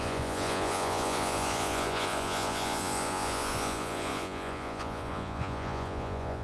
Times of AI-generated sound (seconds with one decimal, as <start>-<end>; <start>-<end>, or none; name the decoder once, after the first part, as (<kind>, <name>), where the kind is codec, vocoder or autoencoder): 0.0-6.4 (vocoder, Vocos)